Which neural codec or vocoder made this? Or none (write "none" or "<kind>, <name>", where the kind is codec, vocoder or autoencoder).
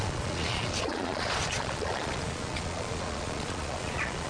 vocoder, Vocos